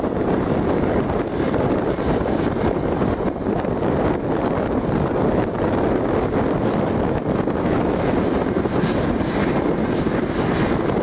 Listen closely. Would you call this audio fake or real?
real